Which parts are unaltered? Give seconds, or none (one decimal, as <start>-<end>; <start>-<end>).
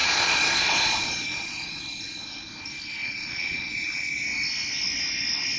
1.8-3.0; 4.2-5.6